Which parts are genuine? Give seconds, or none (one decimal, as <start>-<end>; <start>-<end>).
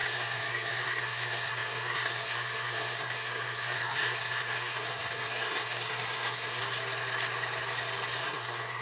6.6-8.2